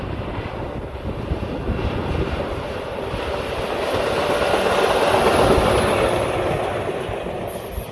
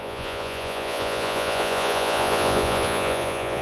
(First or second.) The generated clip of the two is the second